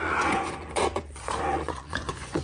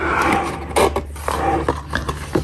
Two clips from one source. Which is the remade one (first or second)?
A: first